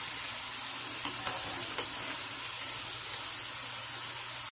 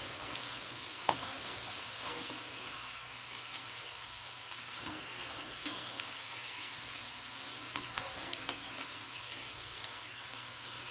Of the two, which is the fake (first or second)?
second